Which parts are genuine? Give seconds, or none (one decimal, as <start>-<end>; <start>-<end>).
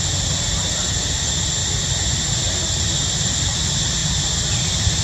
0.0-5.0